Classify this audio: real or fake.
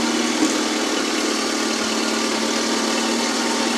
real